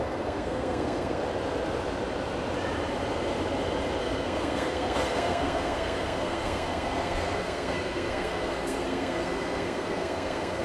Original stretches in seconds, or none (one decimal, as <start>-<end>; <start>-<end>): 1.2-4.0